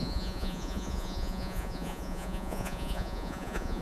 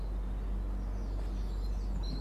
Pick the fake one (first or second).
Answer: first